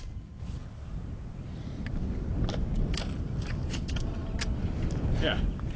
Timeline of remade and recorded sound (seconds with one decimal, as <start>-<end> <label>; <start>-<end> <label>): 0.0-5.8 recorded